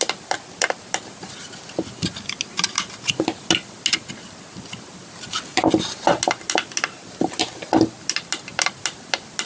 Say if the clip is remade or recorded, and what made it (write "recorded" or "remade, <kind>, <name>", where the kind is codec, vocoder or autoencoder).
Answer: recorded